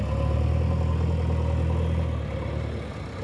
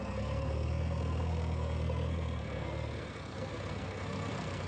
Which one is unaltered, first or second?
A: first